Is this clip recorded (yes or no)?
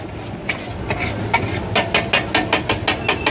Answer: yes